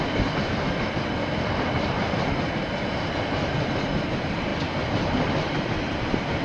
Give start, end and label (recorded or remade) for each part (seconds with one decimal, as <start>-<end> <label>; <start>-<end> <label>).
0.0-6.4 recorded